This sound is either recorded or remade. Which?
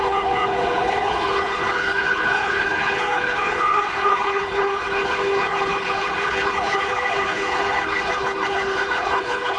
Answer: remade